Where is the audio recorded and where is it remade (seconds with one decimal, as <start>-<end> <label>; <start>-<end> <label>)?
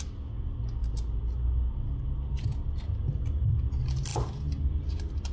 0.0-5.3 recorded